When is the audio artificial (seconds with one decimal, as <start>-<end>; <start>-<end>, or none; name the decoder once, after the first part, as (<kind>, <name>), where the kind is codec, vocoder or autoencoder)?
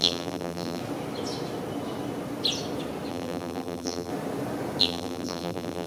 0.0-0.8 (vocoder, BigVGAN v2); 3.1-4.1; 4.8-5.9